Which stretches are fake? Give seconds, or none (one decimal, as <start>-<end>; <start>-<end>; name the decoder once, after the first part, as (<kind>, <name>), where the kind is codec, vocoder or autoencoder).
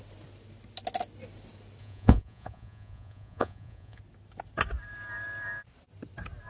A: 1.8-4.0 (vocoder, Vocos)